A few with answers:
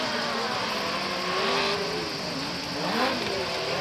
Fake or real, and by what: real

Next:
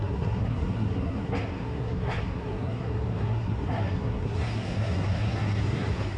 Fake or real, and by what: fake, codec, SNAC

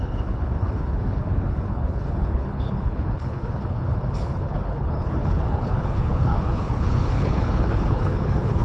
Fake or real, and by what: fake, codec, HILCodec